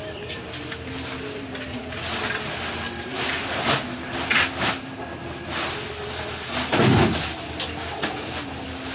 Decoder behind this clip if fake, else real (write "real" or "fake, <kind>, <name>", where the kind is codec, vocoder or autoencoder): real